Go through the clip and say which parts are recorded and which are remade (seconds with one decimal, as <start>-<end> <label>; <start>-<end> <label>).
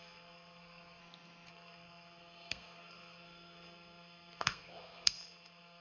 0.0-1.0 remade; 1.0-1.5 recorded; 1.5-5.8 remade